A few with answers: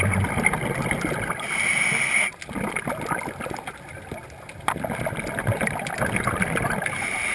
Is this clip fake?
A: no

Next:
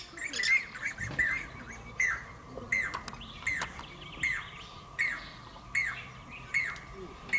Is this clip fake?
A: no